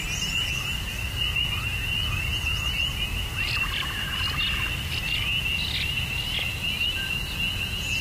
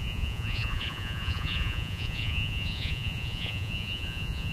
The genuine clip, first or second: first